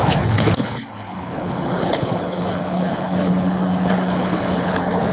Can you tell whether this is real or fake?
fake